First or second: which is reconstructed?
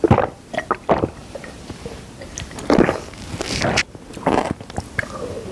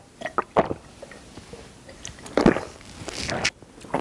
first